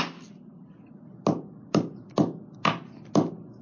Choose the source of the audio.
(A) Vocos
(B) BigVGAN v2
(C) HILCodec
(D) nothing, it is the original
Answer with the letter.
D